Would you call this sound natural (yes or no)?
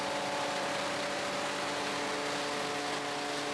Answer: yes